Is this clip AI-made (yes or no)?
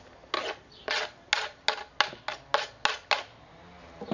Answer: no